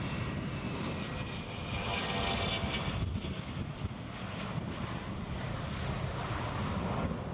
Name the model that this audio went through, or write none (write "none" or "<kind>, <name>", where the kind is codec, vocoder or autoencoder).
none